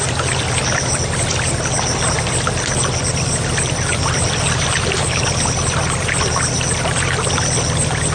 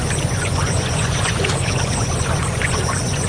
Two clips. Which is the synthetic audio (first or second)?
second